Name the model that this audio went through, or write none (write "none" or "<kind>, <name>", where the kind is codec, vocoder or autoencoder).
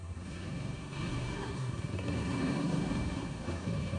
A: codec, SNAC